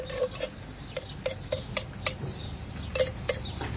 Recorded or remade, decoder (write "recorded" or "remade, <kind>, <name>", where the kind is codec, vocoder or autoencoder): recorded